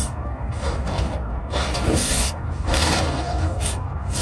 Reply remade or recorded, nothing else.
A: remade